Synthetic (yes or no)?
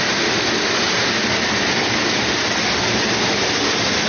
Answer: no